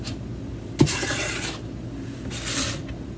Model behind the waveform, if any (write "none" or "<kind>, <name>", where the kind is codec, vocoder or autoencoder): none